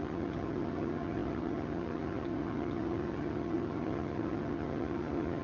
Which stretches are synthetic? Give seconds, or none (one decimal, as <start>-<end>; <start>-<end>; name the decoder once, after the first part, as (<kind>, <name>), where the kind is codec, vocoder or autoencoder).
0.0-5.4 (vocoder, HiFi-GAN)

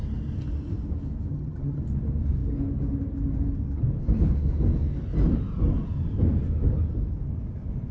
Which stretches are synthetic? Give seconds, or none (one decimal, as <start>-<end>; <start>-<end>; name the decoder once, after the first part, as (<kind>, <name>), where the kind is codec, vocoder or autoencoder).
1.3-1.8 (vocoder, HiFi-GAN)

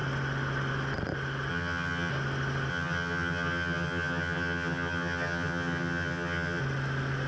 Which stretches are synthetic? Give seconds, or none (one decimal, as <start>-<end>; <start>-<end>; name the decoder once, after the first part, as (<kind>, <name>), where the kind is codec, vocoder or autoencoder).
1.5-2.1 (vocoder, HiFi-GAN); 2.7-6.6

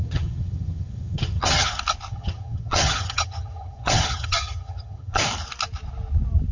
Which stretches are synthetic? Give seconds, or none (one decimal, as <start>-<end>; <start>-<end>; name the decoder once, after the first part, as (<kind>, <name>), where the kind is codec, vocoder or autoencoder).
0.0-1.7 (vocoder, HiFi-GAN); 2.1-5.2

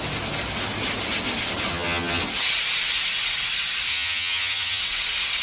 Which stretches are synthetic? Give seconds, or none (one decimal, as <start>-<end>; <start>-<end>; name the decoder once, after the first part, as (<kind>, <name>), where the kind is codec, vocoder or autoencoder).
1.7-2.2 (vocoder, HiFi-GAN); 3.9-4.8